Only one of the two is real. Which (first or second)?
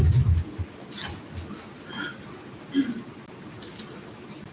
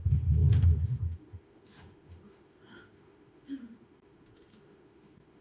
first